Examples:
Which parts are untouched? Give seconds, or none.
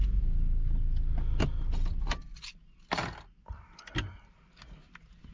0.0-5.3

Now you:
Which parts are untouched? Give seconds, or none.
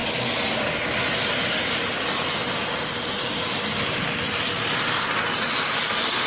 0.0-6.3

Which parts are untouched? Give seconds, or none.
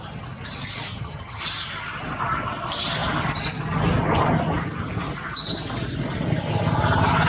0.0-0.9; 1.4-7.3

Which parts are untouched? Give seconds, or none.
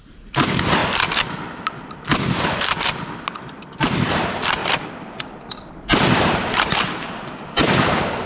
0.8-3.8; 4.6-5.7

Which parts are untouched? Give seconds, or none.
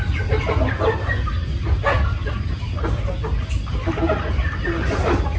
0.0-5.4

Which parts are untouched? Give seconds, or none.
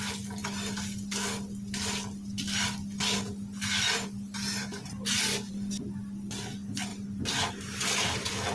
0.0-8.5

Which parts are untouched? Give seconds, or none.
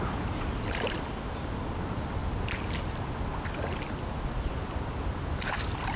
0.0-6.0